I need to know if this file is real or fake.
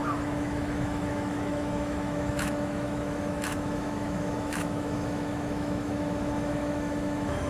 fake